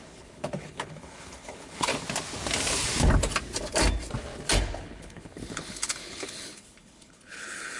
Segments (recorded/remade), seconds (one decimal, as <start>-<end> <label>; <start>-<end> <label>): 0.0-1.9 remade; 1.9-4.6 recorded; 4.6-7.8 remade